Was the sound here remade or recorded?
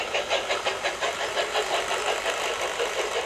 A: recorded